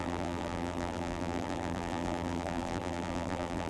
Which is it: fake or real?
fake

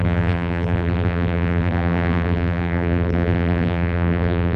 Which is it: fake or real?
fake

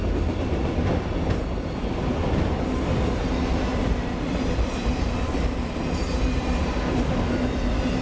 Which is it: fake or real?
real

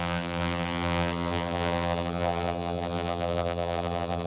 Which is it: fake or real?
fake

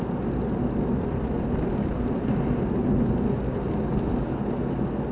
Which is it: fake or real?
real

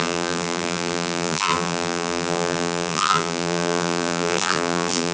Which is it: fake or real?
fake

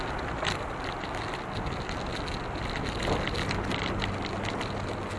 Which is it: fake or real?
real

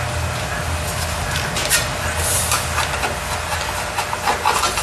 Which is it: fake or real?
real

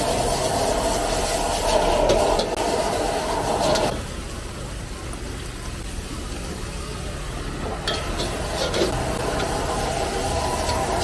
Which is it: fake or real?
real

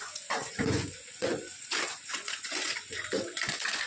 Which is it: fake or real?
fake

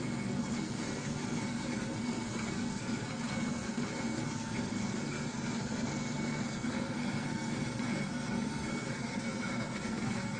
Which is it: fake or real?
fake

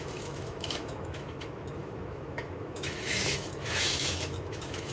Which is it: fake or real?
fake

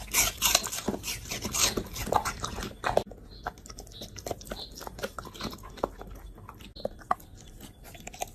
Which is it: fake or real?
real